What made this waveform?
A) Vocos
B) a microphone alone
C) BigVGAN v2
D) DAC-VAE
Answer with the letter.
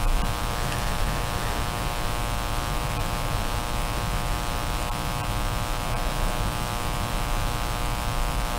B